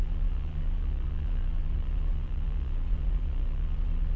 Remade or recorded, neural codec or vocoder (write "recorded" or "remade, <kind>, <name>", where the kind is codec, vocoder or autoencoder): remade, vocoder, Vocos